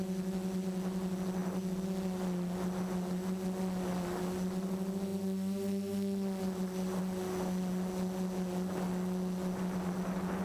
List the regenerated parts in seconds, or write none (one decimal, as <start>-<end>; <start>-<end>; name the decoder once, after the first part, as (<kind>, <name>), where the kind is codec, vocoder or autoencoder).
none